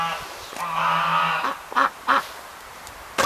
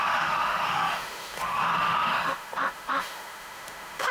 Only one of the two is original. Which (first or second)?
first